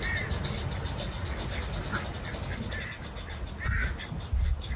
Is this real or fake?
real